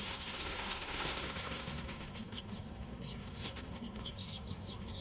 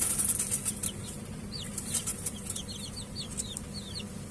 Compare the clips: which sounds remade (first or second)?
first